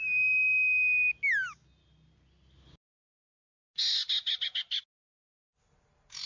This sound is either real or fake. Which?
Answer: real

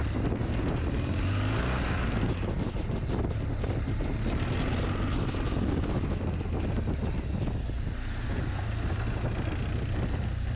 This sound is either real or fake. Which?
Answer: real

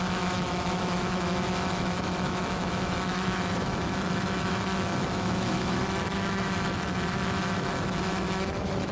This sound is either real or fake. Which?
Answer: fake